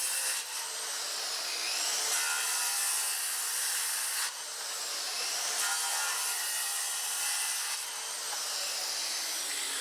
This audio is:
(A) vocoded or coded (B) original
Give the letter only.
B